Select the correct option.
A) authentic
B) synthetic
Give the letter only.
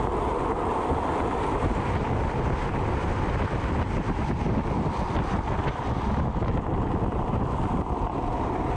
A